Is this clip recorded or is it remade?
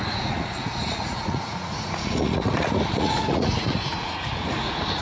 remade